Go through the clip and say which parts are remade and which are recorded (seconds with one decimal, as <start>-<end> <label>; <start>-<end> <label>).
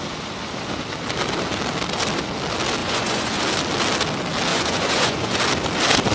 0.0-2.8 recorded; 2.8-3.4 remade; 3.4-4.5 recorded; 4.5-5.4 remade; 5.4-6.1 recorded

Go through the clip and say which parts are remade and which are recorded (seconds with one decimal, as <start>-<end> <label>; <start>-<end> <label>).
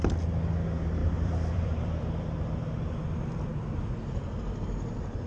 0.0-1.0 recorded; 1.0-2.3 remade; 2.3-5.3 recorded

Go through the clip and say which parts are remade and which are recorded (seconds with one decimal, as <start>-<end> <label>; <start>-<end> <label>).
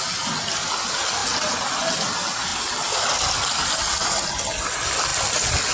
0.0-5.7 recorded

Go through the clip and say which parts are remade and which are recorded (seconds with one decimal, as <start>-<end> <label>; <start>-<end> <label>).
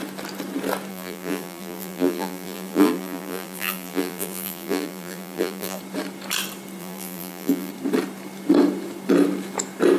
0.0-0.9 recorded; 0.9-5.8 remade; 5.8-6.8 recorded; 6.8-7.7 remade; 7.7-10.0 recorded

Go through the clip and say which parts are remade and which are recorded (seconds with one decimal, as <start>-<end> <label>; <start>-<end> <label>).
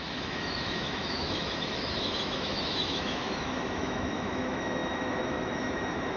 0.0-6.2 remade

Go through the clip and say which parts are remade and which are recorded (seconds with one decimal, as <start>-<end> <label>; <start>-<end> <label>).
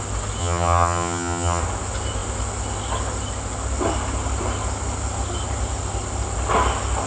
0.0-0.4 recorded; 0.4-1.6 remade; 1.6-7.1 recorded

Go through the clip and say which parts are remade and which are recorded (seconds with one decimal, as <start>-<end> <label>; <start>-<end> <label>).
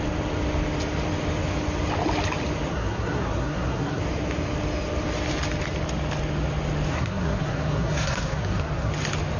0.0-2.7 recorded; 2.7-4.0 remade; 4.0-6.9 recorded; 6.9-8.9 remade; 8.9-9.4 recorded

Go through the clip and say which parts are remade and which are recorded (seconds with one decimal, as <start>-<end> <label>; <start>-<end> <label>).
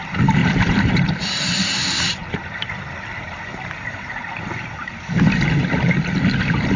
0.0-0.4 recorded; 0.4-1.1 remade; 1.1-6.8 recorded